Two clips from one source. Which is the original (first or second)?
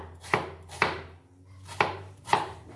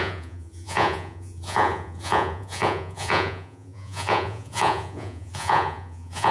first